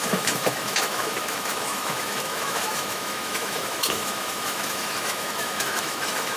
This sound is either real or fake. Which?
fake